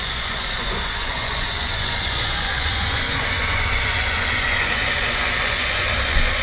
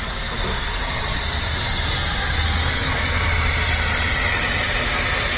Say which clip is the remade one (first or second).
first